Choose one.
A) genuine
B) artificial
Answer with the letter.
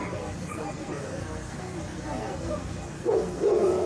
B